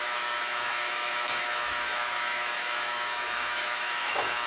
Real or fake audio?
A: fake